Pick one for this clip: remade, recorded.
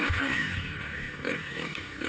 remade